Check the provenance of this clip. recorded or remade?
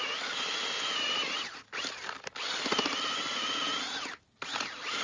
recorded